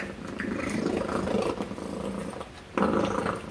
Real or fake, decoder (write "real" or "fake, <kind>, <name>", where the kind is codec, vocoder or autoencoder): real